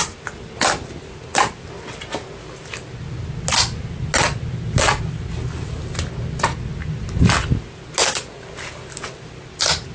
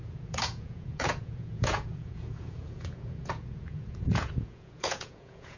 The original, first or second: first